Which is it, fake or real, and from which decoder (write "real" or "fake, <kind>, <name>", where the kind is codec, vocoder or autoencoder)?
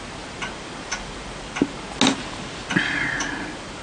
real